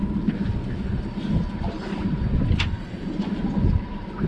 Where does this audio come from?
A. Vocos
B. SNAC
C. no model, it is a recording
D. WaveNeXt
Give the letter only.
C